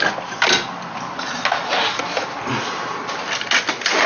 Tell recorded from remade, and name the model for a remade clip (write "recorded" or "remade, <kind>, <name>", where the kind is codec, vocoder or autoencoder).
recorded